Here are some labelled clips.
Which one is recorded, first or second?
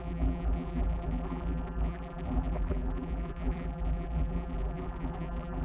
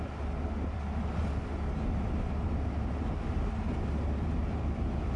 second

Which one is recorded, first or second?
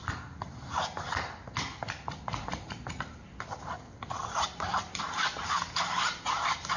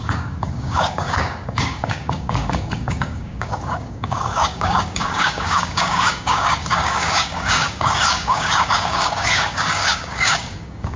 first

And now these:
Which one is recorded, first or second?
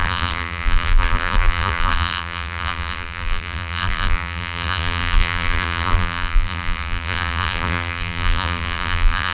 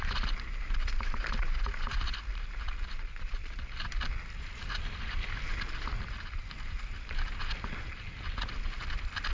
second